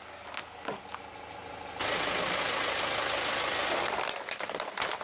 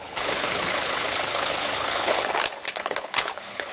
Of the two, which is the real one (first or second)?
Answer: first